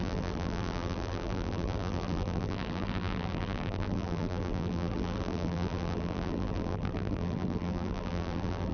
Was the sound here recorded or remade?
remade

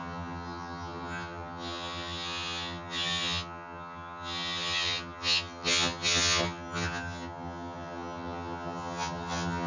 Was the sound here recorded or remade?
remade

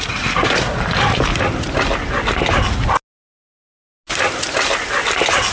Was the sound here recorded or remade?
recorded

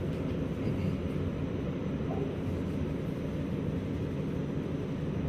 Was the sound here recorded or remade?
recorded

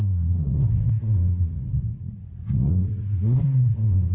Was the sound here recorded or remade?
remade